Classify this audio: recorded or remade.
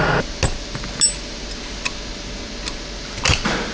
recorded